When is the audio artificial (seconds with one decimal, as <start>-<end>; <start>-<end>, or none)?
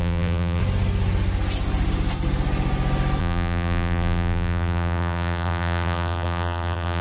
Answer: 0.0-0.6; 3.2-7.0